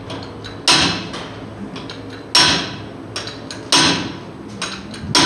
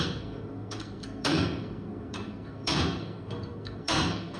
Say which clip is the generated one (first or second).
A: second